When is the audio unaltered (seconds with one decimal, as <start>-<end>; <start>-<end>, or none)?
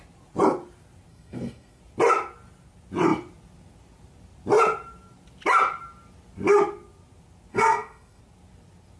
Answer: 0.0-1.1; 1.8-7.5; 8.2-9.0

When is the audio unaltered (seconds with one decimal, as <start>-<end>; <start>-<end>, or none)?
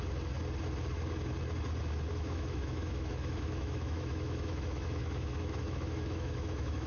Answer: 0.0-2.1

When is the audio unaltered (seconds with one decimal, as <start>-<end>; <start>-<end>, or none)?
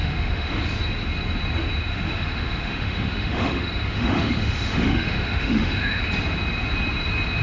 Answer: 0.6-1.9; 6.0-7.4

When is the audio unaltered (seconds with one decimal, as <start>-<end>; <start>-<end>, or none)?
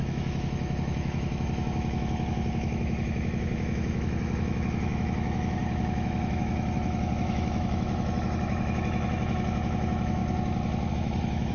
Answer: 10.2-10.9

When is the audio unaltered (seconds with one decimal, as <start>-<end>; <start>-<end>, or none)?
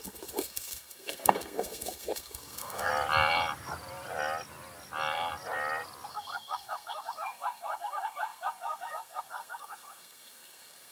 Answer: 2.9-6.1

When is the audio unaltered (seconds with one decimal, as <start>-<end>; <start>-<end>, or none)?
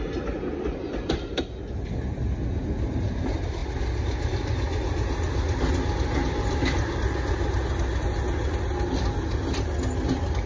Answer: 0.0-10.5